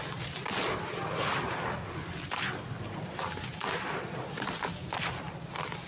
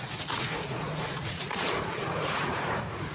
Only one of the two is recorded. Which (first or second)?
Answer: first